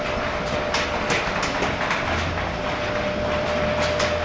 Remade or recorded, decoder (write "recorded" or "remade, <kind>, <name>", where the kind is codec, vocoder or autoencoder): recorded